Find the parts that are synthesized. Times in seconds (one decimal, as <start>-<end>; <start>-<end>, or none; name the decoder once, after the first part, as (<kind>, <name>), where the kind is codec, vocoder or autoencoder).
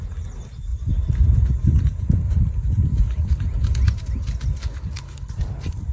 4.6-5.3 (codec, HILCodec)